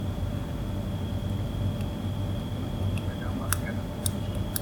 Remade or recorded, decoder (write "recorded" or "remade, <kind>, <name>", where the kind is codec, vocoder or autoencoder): recorded